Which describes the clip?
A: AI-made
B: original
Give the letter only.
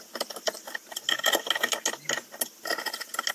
B